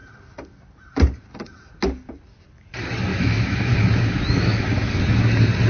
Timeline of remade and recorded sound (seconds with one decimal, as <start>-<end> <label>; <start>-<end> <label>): 0.0-3.1 recorded; 3.1-4.6 remade; 4.6-5.7 recorded